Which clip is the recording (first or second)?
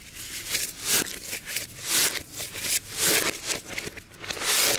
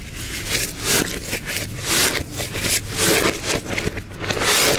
second